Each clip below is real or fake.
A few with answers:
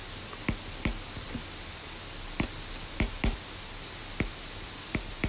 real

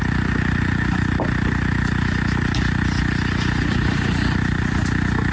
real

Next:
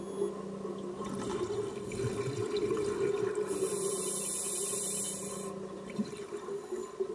real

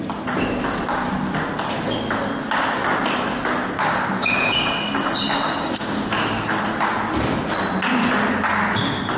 real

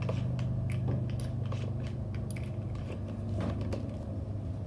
real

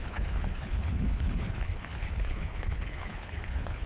fake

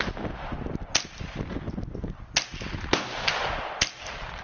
real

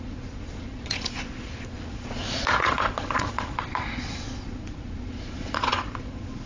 fake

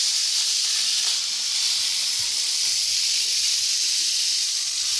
real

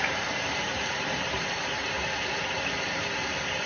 fake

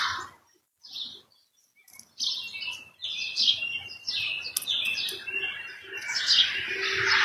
real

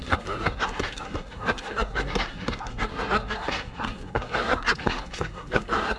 fake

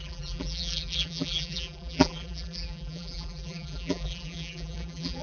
fake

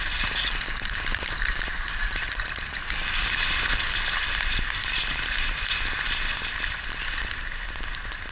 real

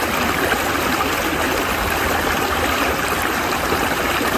real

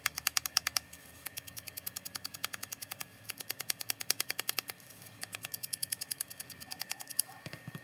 fake